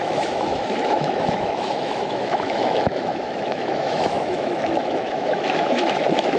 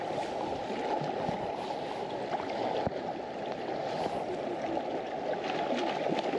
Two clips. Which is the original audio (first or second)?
second